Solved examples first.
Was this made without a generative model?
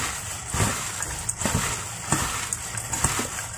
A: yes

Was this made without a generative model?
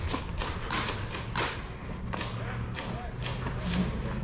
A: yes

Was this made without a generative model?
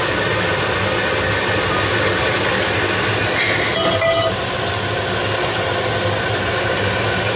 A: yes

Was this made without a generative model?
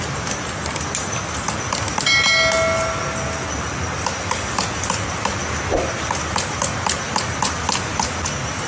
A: yes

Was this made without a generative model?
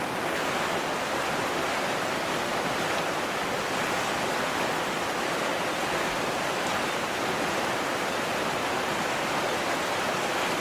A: yes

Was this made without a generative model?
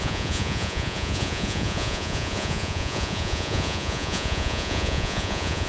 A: no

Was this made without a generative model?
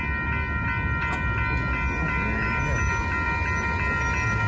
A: yes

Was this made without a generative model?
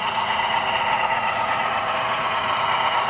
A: no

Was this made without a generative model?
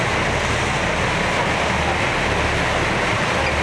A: yes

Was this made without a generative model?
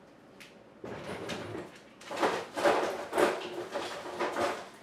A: yes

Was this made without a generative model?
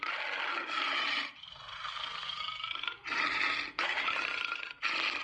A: yes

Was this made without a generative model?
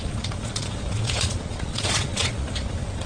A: no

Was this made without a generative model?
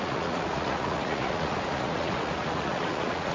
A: no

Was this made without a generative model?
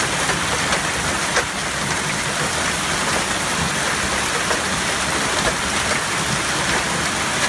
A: yes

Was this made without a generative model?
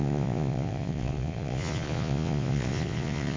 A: no